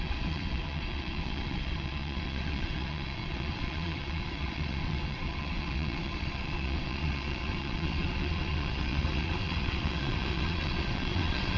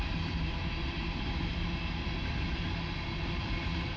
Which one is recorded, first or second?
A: second